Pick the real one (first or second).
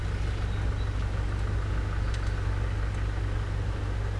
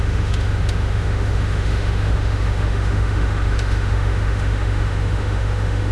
first